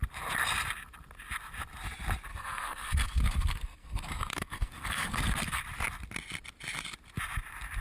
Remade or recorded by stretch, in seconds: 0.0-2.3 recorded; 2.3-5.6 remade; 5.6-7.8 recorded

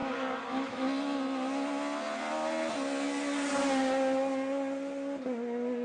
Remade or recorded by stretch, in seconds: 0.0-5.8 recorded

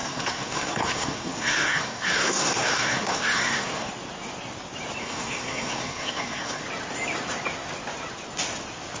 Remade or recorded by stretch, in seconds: 0.0-3.9 remade; 3.9-5.0 recorded; 5.0-6.6 remade; 6.6-9.0 recorded

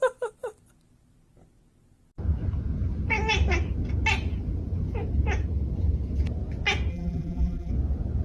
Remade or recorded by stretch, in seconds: 0.0-6.9 recorded; 6.9-7.7 remade; 7.7-8.2 recorded

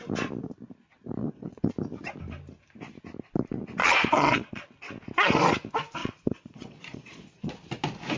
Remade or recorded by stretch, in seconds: 0.0-1.2 recorded; 1.2-1.7 remade; 1.7-3.8 recorded; 3.8-4.6 remade; 4.6-6.0 recorded; 6.0-7.5 remade; 7.5-8.2 recorded

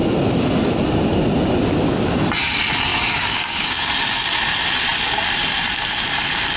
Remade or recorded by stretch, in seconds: 0.0-2.9 recorded; 2.9-3.9 remade; 3.9-6.6 recorded

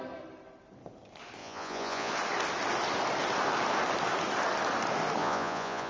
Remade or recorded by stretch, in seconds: 0.0-1.4 recorded; 1.4-2.1 remade; 2.1-5.2 recorded; 5.2-5.9 remade